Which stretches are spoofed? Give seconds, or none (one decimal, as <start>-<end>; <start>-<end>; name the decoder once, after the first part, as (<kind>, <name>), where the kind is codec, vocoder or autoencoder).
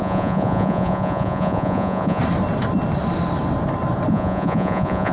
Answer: 0.0-2.2 (vocoder, Vocos); 4.1-5.1